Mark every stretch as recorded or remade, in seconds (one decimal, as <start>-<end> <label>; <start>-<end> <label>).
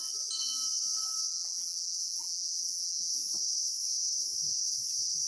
0.0-1.3 recorded; 1.3-3.1 remade; 3.1-5.3 recorded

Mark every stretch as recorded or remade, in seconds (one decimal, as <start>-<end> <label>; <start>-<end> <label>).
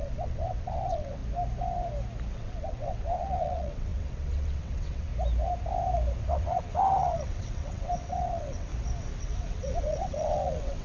0.0-1.2 remade; 1.2-2.3 recorded; 2.3-5.1 remade; 5.1-6.2 recorded; 6.2-8.7 remade; 8.7-9.2 recorded; 9.2-10.8 remade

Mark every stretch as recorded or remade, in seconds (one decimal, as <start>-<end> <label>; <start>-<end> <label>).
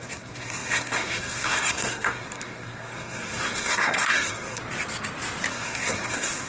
0.0-4.6 remade; 4.6-5.5 recorded; 5.5-6.5 remade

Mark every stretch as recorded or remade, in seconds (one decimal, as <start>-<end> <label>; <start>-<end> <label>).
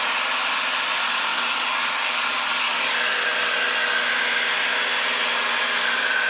0.0-1.3 recorded; 1.3-2.9 remade; 2.9-6.3 recorded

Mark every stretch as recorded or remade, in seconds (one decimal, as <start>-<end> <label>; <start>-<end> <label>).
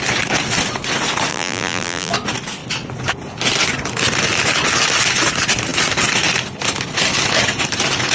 0.0-1.3 recorded; 1.3-2.1 remade; 2.1-8.1 recorded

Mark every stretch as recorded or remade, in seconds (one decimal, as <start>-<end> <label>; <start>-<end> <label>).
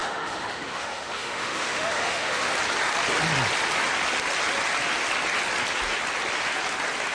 0.0-2.5 remade; 2.5-7.1 recorded